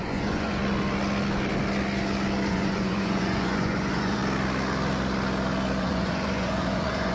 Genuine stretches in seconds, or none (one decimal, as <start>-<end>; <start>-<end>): 0.6-2.5; 4.2-5.8